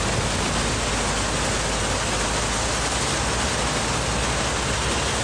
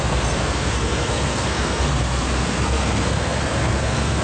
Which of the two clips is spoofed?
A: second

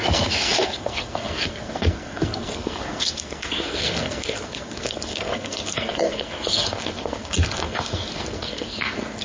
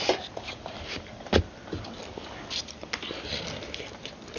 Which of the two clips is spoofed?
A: first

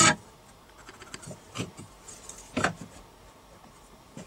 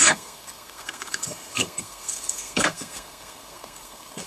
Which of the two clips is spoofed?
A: second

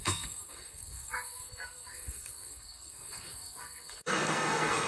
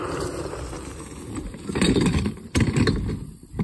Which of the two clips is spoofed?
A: first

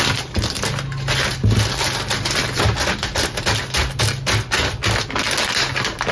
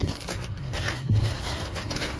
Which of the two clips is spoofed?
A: second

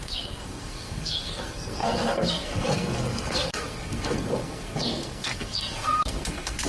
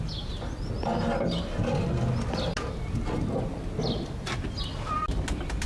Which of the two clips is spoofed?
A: first